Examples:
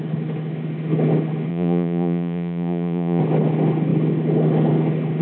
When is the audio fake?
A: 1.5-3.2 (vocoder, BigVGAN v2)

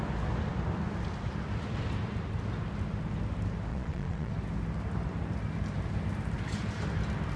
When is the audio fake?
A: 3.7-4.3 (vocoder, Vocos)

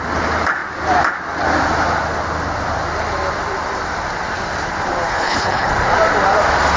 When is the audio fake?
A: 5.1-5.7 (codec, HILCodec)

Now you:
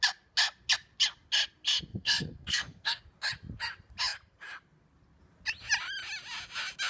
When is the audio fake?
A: 1.9-3.0 (codec, SNAC)

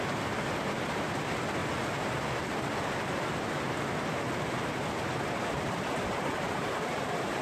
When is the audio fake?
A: none

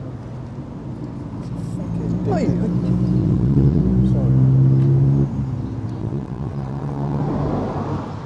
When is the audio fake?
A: 3.2-3.8 (vocoder, WaveNeXt); 6.0-7.2